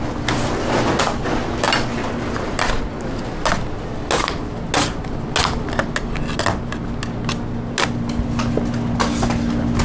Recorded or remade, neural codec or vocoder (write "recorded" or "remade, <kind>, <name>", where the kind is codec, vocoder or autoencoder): recorded